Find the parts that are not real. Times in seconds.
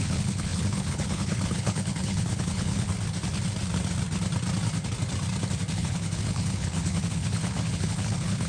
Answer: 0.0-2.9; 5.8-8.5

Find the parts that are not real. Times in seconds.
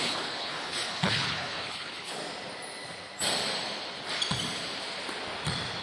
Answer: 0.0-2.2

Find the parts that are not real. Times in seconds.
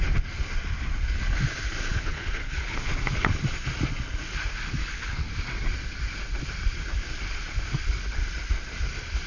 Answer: 1.9-3.3; 4.8-5.3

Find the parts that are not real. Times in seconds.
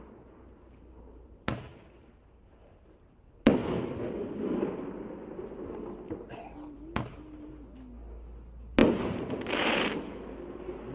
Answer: none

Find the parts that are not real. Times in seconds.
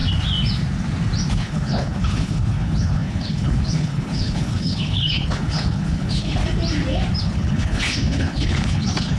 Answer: 1.3-6.4; 7.2-9.2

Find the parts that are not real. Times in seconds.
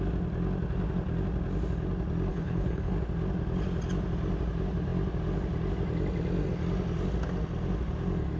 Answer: 2.3-2.9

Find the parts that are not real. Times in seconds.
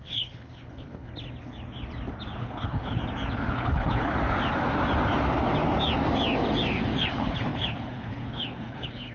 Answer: 0.0-1.1; 2.4-3.0; 3.5-4.1; 7.0-9.1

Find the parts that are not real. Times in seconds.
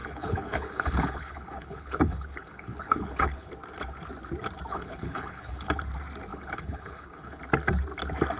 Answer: 0.0-3.5; 4.7-5.7; 6.3-7.4